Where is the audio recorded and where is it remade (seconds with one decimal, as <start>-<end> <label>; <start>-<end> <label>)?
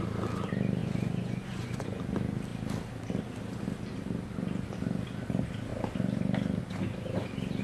0.0-0.8 recorded; 0.8-2.0 remade; 2.0-7.6 recorded